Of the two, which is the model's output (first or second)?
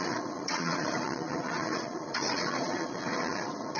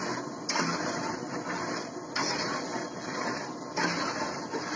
first